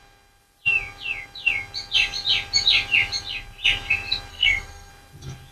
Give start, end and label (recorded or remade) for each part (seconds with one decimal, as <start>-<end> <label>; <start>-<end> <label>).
0.0-4.3 recorded; 4.3-4.9 remade; 4.9-5.5 recorded